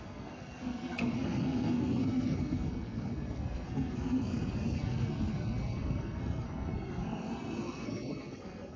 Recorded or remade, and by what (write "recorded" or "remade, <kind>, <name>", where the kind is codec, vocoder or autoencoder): remade, codec, SNAC